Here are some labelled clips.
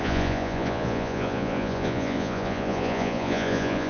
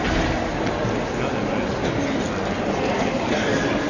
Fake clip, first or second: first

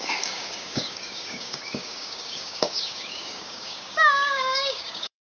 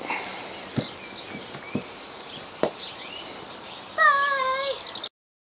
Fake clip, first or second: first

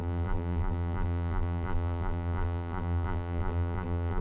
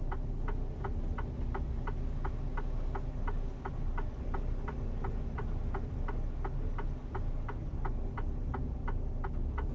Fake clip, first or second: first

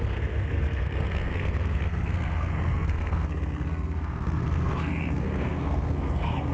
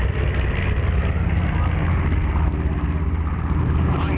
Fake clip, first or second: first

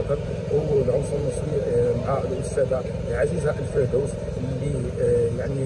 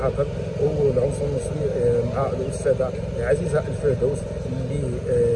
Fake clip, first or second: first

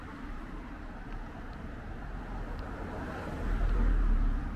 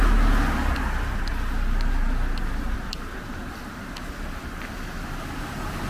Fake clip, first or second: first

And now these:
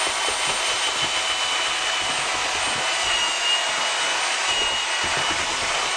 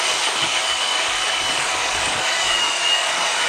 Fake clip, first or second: second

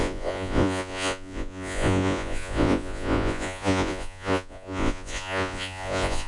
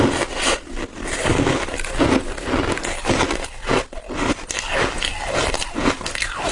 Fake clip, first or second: first